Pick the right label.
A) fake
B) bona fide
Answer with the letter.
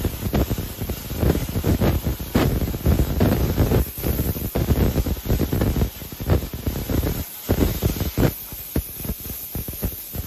B